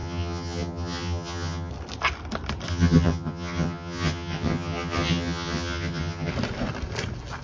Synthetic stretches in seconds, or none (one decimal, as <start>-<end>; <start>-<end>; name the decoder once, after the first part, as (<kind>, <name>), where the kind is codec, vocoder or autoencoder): 0.0-1.7 (vocoder, HiFi-GAN); 2.7-6.3